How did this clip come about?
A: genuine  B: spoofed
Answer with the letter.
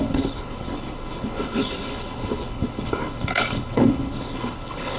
B